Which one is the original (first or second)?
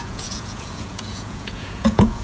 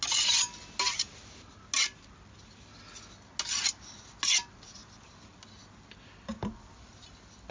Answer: second